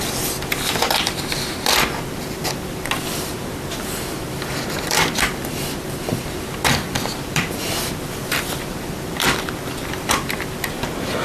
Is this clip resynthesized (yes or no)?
yes